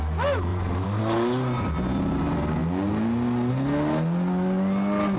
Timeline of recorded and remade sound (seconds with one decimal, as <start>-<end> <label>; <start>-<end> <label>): 0.0-0.5 recorded; 0.5-1.0 remade; 1.0-5.2 recorded